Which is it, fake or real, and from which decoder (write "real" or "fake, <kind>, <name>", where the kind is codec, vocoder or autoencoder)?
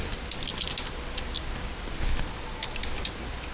real